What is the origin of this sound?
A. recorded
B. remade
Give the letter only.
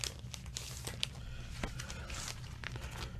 A